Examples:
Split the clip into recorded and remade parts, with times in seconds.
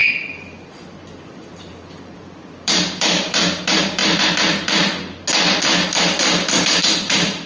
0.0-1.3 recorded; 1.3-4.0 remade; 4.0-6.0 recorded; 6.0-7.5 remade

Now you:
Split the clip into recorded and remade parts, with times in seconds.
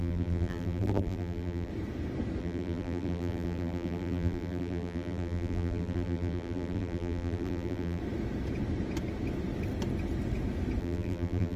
0.0-1.7 remade; 1.7-2.4 recorded; 2.4-8.0 remade; 8.0-10.8 recorded; 10.8-11.6 remade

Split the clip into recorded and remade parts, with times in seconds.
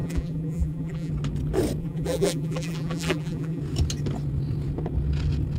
0.0-1.1 remade; 1.1-1.8 recorded; 1.8-3.6 remade; 3.6-5.6 recorded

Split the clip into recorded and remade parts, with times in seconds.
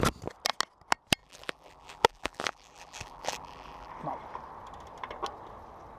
0.0-1.2 recorded; 1.2-3.9 remade; 3.9-6.0 recorded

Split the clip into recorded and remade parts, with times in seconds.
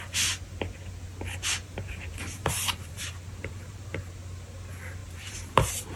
0.0-1.6 recorded; 1.6-4.0 remade; 4.0-5.0 recorded; 5.0-6.0 remade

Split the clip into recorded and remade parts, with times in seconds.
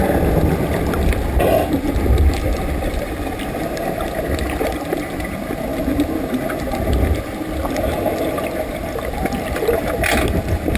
0.0-10.8 recorded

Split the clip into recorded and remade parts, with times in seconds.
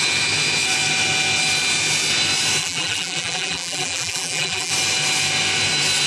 0.0-2.6 recorded; 2.6-4.7 remade; 4.7-6.1 recorded